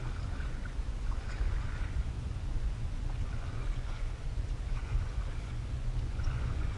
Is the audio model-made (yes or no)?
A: yes